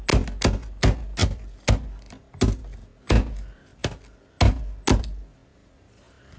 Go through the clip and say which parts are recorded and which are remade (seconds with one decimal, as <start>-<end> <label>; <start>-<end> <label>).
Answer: 0.0-6.4 recorded